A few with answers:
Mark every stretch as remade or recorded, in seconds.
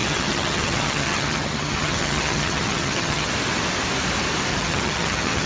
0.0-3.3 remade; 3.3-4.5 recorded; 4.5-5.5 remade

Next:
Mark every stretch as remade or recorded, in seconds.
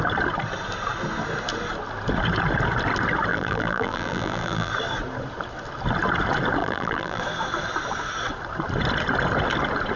0.0-3.3 recorded; 3.3-4.7 remade; 4.7-6.6 recorded; 6.6-7.2 remade; 7.2-10.0 recorded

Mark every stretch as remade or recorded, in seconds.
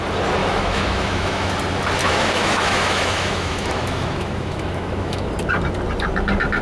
0.0-0.4 recorded; 0.4-1.5 remade; 1.5-2.0 recorded; 2.0-5.3 remade; 5.3-6.6 recorded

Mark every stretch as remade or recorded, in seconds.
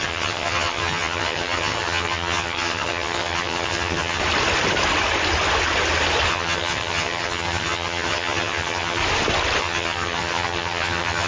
0.0-4.2 remade; 4.2-6.3 recorded; 6.3-9.0 remade; 9.0-9.6 recorded; 9.6-11.3 remade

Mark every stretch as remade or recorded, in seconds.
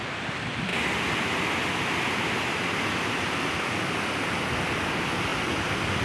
0.0-6.0 recorded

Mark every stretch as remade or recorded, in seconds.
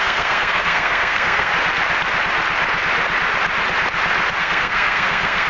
0.0-1.5 remade; 1.5-4.4 recorded; 4.4-5.5 remade